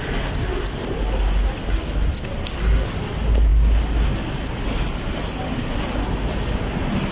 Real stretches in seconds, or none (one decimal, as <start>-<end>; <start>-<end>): 0.0-7.1